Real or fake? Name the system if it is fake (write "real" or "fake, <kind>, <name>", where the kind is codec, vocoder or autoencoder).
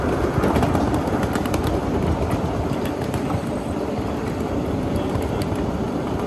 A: real